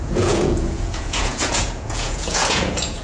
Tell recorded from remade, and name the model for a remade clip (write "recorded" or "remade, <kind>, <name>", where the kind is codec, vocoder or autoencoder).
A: remade, vocoder, Vocos